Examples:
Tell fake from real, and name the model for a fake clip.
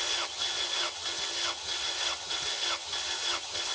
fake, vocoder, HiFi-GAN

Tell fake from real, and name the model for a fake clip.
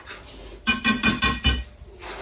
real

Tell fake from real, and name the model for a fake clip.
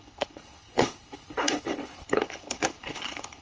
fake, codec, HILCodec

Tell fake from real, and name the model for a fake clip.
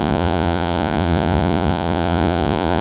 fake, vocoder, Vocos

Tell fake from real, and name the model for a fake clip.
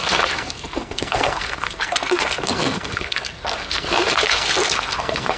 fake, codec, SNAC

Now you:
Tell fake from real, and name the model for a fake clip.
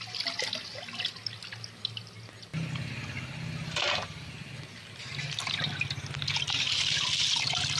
real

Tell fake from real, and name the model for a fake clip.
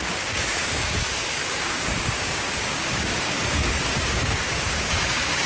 fake, codec, DAC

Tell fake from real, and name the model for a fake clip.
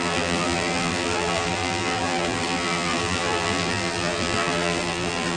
fake, vocoder, BigVGAN v2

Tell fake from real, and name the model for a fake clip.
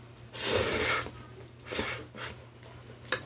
fake, vocoder, BigVGAN v2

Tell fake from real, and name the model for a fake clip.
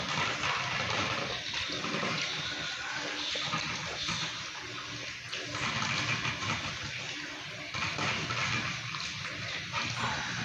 real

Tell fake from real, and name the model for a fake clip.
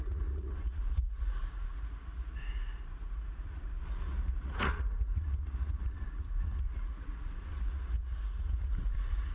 fake, vocoder, Vocos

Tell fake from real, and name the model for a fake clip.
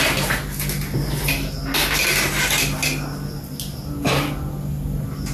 real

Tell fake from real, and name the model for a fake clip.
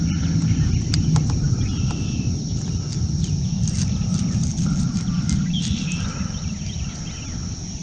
real